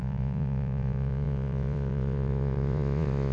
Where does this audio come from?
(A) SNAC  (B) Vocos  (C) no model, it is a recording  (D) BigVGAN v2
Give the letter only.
B